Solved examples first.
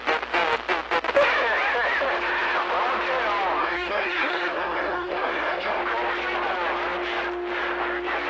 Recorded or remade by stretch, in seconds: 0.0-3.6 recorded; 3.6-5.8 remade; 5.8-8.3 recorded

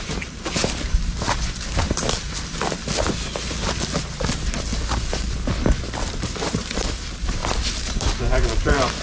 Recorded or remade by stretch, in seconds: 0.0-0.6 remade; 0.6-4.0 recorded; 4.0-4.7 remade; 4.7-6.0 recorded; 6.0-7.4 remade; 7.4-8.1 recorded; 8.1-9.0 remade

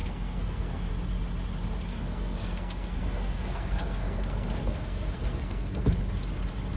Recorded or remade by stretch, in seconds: 0.0-0.9 remade; 0.9-1.9 recorded; 1.9-6.0 remade; 6.0-6.8 recorded

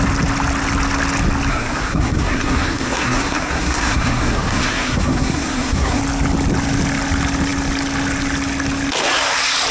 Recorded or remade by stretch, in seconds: 0.0-1.5 recorded; 1.5-6.0 remade; 6.0-9.7 recorded